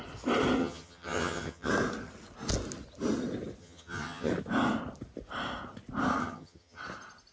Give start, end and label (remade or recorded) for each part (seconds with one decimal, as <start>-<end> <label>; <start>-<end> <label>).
0.0-0.6 recorded; 0.6-1.7 remade; 1.7-3.6 recorded; 3.6-4.3 remade; 4.3-6.2 recorded; 6.2-6.8 remade; 6.8-7.3 recorded